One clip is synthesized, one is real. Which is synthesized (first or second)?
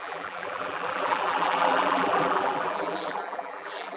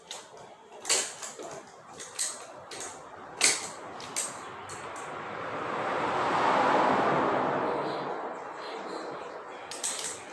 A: first